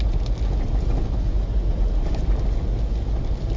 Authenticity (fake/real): real